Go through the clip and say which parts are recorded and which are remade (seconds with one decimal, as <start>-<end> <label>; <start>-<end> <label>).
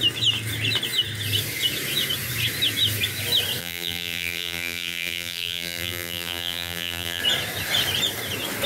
0.0-3.6 recorded; 3.6-7.2 remade; 7.2-8.7 recorded